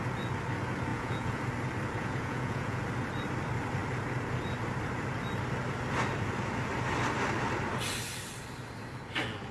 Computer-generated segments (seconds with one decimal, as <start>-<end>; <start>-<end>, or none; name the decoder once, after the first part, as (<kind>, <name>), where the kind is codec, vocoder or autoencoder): 0.9-1.4 (vocoder, Vocos); 2.0-2.8

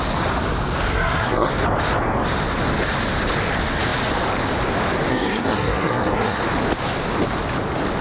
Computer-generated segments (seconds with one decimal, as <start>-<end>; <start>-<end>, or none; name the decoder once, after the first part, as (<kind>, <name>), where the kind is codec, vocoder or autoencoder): 0.9-1.5 (codec, SNAC); 5.1-6.4

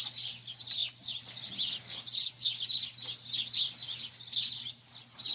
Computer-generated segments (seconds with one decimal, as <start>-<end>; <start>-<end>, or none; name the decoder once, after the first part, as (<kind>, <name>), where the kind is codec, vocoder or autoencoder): none

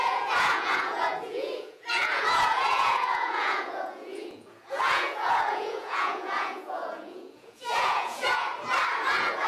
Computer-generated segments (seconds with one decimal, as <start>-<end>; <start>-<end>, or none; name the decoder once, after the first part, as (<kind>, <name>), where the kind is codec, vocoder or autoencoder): 0.0-8.5 (vocoder, Vocos); 9.0-9.5